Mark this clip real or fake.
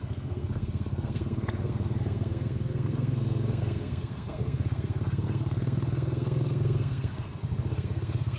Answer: fake